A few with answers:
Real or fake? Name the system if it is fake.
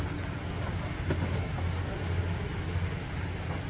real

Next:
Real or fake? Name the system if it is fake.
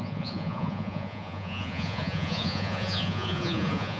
fake, vocoder, Vocos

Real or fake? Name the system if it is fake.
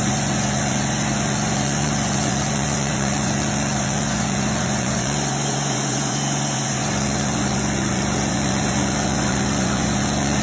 fake, vocoder, Vocos